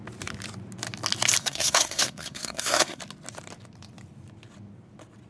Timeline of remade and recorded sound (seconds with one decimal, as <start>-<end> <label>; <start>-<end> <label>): 0.0-1.4 recorded; 1.4-3.0 remade; 3.0-5.3 recorded